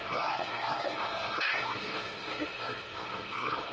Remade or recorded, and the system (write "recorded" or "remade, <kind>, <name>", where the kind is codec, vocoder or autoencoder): remade, codec, SNAC